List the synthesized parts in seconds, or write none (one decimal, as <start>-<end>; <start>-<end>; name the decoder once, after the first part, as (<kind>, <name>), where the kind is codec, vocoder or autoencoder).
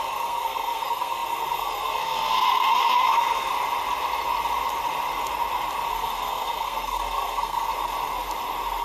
0.0-3.5 (codec, SNAC); 5.9-7.7